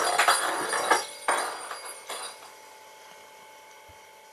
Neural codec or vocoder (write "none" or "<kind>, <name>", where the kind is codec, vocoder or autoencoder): none